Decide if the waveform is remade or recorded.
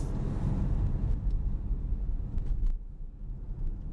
recorded